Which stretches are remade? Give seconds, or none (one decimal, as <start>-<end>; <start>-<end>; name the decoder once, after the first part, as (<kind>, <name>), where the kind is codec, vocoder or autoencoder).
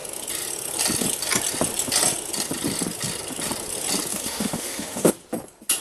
4.1-5.1 (autoencoder, DAC-VAE)